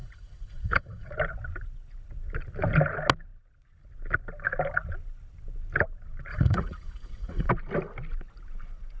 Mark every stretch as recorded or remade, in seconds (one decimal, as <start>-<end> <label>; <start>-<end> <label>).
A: 0.0-1.1 remade; 1.1-6.3 recorded; 6.3-7.5 remade; 7.5-9.0 recorded